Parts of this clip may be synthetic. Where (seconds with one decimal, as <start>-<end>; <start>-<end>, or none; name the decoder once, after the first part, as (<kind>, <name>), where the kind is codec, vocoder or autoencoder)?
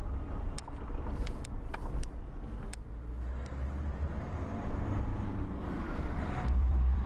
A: 4.2-5.1 (vocoder, BigVGAN v2); 5.6-7.1